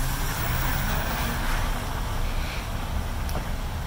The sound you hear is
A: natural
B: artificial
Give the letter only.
A